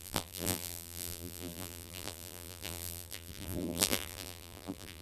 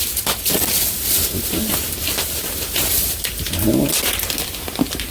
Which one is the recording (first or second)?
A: second